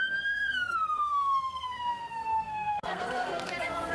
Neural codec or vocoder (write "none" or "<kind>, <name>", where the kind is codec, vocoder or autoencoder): codec, SNAC